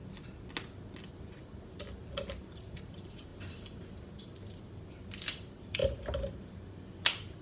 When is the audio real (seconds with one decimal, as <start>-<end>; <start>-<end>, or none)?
0.0-1.1; 5.8-6.5